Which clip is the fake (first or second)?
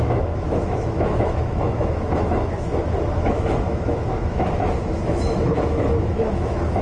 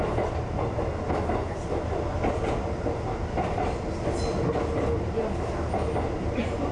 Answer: first